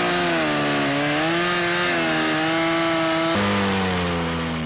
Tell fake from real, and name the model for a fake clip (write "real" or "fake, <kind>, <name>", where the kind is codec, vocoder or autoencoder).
real